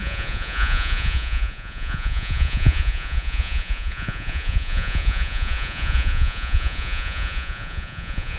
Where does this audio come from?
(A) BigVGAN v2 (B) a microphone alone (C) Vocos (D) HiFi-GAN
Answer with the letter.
C